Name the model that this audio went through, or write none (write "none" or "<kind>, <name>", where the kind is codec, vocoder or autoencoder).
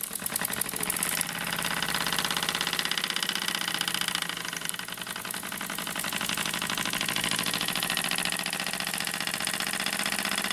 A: none